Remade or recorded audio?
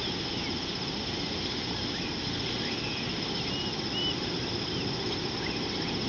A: recorded